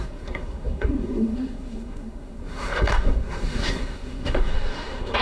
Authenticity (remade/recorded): remade